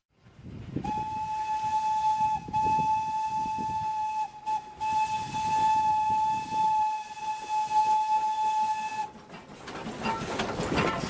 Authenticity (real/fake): real